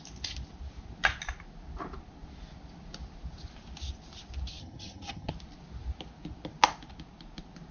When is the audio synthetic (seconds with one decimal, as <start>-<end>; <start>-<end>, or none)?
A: 4.6-5.3